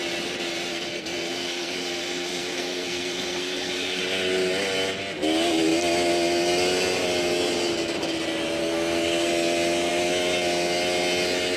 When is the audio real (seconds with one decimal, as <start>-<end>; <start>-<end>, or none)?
0.0-0.7; 4.0-8.6; 9.3-11.6